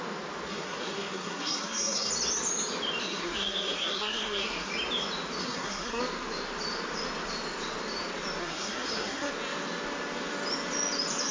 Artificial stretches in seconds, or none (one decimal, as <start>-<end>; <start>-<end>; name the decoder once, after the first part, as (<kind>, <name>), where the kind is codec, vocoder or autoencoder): 0.5-2.1 (codec, SNAC); 3.0-4.7; 5.4-6.0; 8.4-9.3